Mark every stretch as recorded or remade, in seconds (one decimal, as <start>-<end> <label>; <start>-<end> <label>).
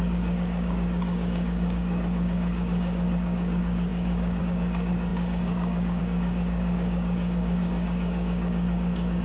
0.0-9.2 remade